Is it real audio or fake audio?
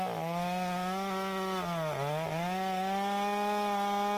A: real